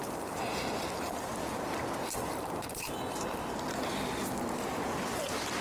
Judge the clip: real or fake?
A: real